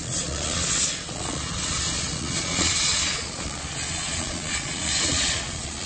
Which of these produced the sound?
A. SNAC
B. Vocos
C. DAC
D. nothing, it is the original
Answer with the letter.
B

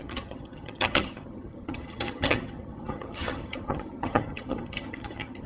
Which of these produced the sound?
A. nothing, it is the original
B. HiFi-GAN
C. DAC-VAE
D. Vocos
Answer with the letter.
B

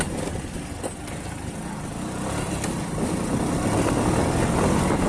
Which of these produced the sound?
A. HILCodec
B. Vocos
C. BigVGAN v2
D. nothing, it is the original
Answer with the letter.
D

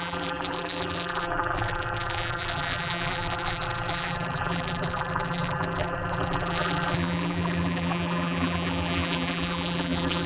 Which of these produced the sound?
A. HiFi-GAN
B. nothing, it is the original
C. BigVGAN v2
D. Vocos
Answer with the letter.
C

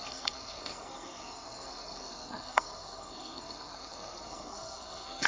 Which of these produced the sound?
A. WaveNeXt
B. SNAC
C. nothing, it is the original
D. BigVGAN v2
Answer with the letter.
B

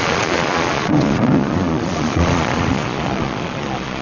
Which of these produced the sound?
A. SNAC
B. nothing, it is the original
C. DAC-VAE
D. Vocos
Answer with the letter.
D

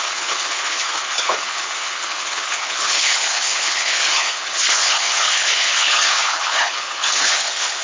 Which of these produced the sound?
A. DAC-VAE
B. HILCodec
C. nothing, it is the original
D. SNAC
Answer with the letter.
B